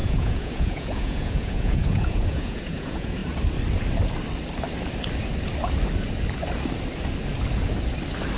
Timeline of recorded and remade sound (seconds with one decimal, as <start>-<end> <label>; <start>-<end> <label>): 0.0-3.2 remade; 3.2-8.4 recorded